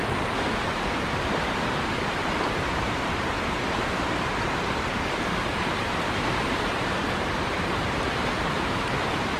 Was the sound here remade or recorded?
remade